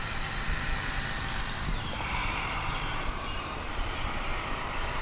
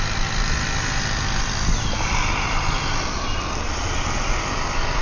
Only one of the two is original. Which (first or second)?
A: second